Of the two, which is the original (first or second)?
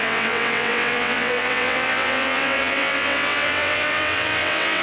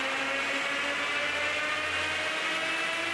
second